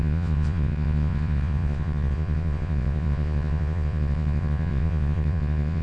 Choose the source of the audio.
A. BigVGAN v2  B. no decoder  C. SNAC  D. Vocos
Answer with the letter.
D